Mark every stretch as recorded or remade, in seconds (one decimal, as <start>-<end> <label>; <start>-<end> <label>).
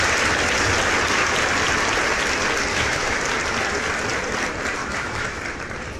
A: 0.0-2.7 recorded; 2.7-3.2 remade; 3.2-4.8 recorded; 4.8-5.4 remade; 5.4-6.0 recorded